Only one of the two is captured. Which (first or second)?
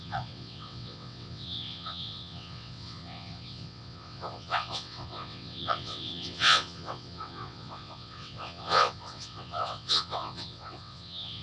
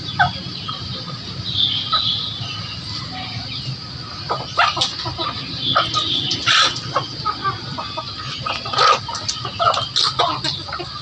second